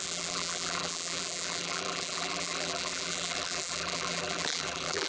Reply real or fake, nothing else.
fake